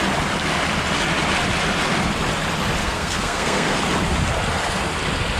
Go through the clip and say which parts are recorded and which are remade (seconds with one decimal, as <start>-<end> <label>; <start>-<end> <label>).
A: 0.0-2.8 recorded; 2.8-3.8 remade; 3.8-5.4 recorded